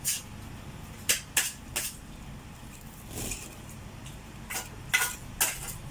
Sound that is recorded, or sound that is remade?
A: recorded